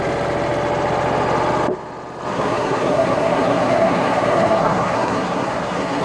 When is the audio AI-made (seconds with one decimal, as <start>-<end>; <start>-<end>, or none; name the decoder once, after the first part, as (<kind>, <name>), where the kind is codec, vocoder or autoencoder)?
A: 2.3-6.0 (codec, SNAC)